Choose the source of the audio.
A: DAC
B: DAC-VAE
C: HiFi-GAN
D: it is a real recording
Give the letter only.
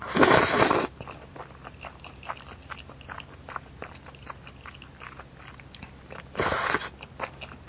D